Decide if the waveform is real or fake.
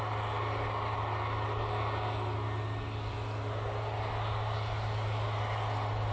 real